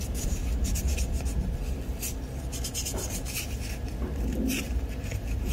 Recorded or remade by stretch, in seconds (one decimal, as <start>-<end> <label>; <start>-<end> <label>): 0.0-0.4 remade; 0.4-3.7 recorded; 3.7-5.5 remade